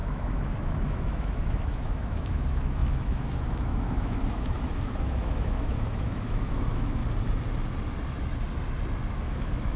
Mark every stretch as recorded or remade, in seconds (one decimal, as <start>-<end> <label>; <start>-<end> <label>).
0.0-7.0 remade; 7.0-9.2 recorded; 9.2-9.8 remade